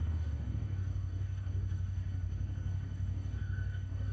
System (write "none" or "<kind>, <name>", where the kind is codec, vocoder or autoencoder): codec, DAC